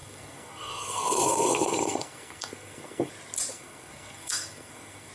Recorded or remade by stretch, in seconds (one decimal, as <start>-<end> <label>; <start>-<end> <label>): 0.0-3.1 remade; 3.1-3.5 recorded; 3.5-5.1 remade